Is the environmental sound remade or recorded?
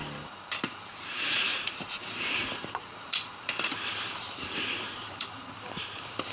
remade